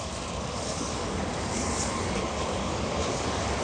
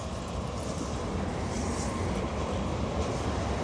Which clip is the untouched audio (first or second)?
second